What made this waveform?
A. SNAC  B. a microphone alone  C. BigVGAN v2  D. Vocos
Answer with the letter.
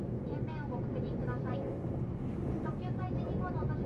B